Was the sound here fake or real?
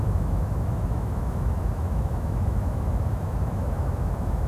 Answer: fake